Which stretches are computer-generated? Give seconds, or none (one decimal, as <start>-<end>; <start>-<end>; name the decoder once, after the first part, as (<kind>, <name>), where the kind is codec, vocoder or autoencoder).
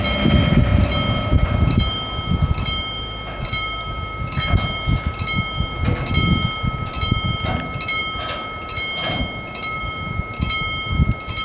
none